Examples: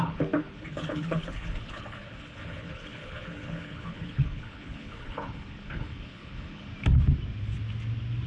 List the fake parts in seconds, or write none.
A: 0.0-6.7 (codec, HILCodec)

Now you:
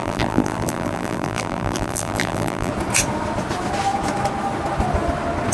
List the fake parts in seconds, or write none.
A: 0.0-2.7 (vocoder, BigVGAN v2)

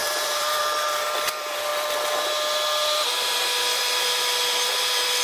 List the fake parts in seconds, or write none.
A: 0.0-0.6 (vocoder, BigVGAN v2)

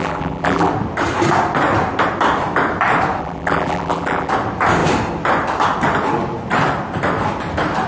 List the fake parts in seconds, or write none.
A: 0.0-0.7 (vocoder, BigVGAN v2); 3.2-4.3

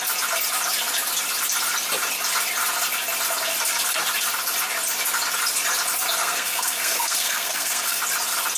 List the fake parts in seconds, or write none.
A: 6.2-8.0 (codec, SNAC)

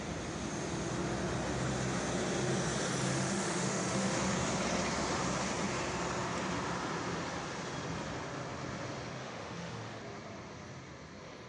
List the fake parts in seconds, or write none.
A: 3.1-4.2 (autoencoder, DAC-VAE); 9.2-10.0

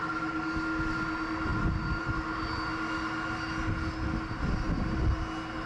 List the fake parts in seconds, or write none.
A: 1.5-2.1 (vocoder, BigVGAN v2)

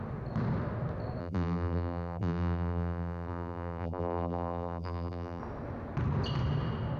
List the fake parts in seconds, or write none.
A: 1.2-5.4 (vocoder, BigVGAN v2)